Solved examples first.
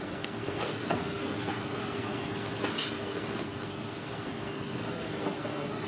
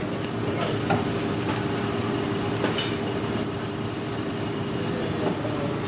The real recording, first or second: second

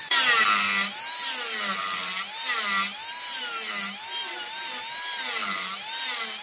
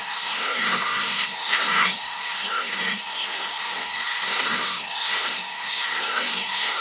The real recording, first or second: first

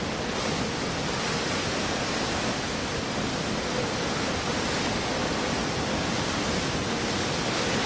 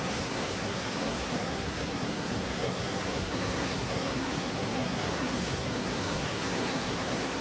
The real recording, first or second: first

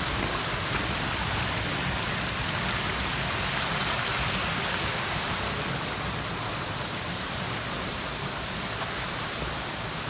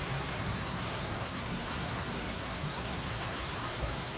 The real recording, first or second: first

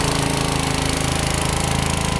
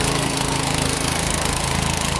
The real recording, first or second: first